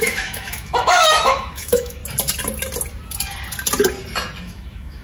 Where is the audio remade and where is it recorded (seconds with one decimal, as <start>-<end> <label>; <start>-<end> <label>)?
0.0-2.0 remade; 2.0-4.4 recorded; 4.4-5.0 remade